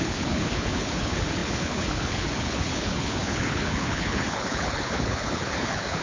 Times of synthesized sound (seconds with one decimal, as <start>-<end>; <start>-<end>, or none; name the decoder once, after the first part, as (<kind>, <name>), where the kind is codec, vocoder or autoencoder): 0.0-6.0 (codec, HILCodec)